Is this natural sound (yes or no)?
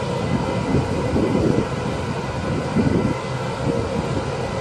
yes